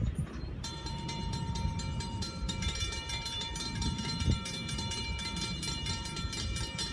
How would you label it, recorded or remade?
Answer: remade